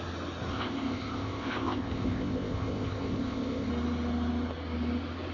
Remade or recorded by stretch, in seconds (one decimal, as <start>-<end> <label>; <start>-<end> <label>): 0.0-0.5 recorded; 0.5-3.7 remade; 3.7-5.3 recorded

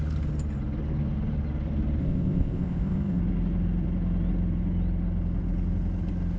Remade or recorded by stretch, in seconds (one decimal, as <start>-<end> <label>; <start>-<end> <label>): 0.0-2.0 recorded; 2.0-3.2 remade; 3.2-6.4 recorded

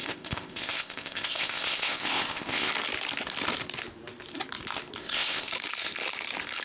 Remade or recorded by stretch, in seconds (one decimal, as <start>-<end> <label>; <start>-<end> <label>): 0.0-2.7 remade; 2.7-5.0 recorded; 5.0-5.5 remade; 5.5-6.6 recorded

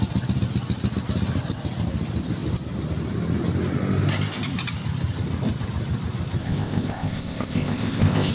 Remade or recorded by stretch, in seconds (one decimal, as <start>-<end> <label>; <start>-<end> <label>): 0.0-6.4 recorded; 6.4-8.3 remade